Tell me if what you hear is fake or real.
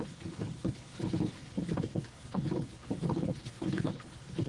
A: fake